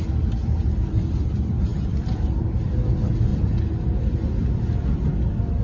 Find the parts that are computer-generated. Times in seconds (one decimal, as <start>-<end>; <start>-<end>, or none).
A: none